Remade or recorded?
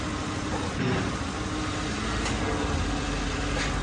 recorded